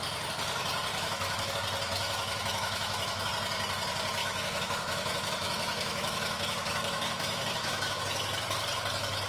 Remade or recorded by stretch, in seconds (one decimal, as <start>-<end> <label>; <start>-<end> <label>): 0.0-0.9 recorded; 0.9-1.5 remade; 1.5-1.9 recorded; 1.9-3.3 remade; 3.3-4.2 recorded; 4.2-8.0 remade; 8.0-9.3 recorded